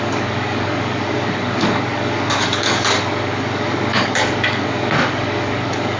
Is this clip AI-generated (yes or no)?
yes